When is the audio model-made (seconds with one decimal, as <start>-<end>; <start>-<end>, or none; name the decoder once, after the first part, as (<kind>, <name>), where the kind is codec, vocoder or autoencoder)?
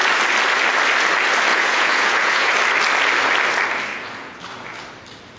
1.5-2.5 (vocoder, Vocos); 3.9-4.4